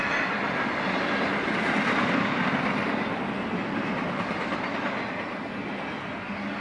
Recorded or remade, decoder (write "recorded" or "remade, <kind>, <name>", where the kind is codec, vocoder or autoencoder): recorded